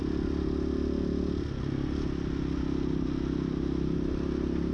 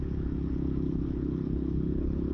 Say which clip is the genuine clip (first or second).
first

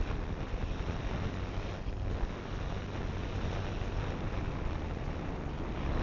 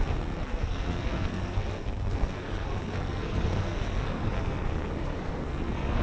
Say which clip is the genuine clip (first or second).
first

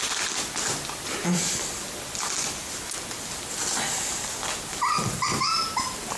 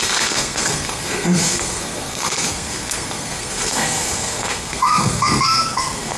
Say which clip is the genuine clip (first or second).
first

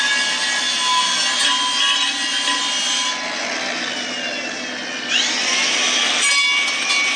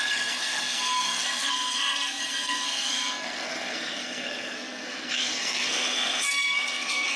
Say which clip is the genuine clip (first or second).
first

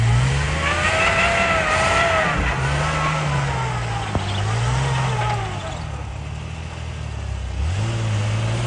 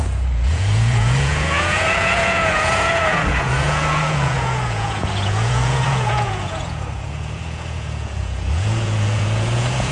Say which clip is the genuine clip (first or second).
first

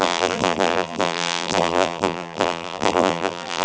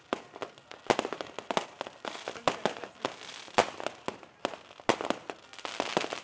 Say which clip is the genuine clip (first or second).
second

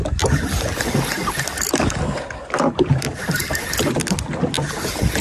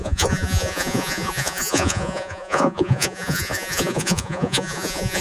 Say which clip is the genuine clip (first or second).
first